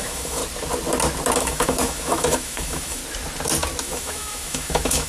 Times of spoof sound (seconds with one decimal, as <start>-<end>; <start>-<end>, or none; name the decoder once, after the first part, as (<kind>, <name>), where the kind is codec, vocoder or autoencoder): 0.0-0.4 (autoencoder, DAC-VAE); 1.4-3.0; 3.8-5.1